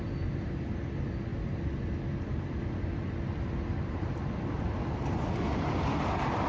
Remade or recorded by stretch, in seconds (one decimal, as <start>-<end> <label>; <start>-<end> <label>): 0.0-6.5 recorded

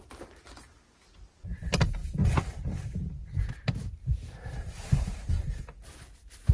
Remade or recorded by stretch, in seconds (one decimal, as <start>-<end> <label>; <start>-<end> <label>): 0.0-2.0 remade; 2.0-5.3 recorded; 5.3-6.5 remade

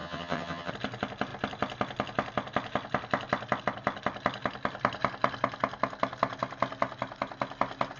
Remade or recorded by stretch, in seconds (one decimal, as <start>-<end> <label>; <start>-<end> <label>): 0.0-0.7 remade; 0.7-8.0 recorded

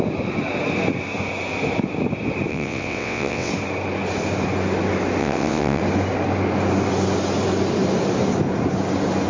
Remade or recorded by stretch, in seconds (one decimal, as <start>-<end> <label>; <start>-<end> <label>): 0.0-2.5 recorded; 2.5-3.5 remade; 3.5-5.2 recorded; 5.2-5.8 remade; 5.8-9.3 recorded